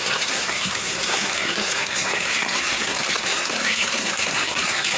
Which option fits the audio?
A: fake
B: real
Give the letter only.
A